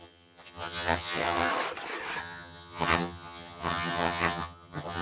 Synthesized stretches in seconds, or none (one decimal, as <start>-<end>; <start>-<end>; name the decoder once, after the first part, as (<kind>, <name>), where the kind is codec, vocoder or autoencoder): 0.0-1.5 (vocoder, HiFi-GAN); 2.2-5.0